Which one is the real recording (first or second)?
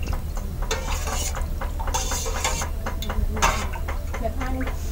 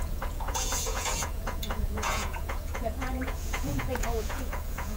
first